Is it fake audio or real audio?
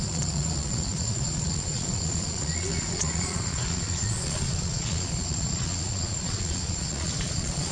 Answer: fake